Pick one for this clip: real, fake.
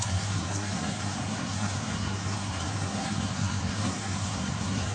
fake